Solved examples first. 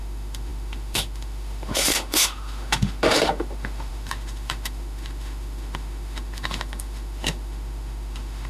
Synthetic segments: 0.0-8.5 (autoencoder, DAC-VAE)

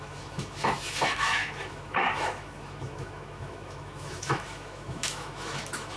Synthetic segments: 0.0-6.0 (autoencoder, DAC-VAE)

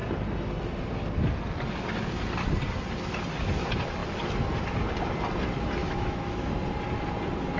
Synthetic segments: 5.8-6.5 (autoencoder, DAC-VAE)

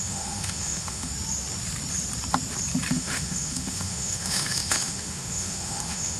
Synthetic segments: 0.0-1.1 (autoencoder, DAC-VAE); 2.9-6.2

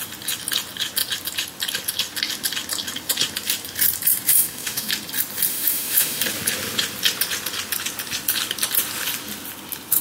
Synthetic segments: 4.3-4.9 (autoencoder, DAC-VAE); 5.5-6.2

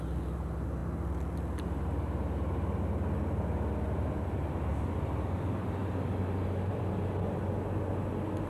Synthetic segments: none

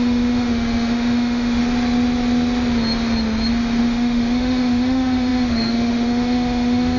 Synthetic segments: 0.0-1.6 (autoencoder, DAC-VAE); 3.8-7.0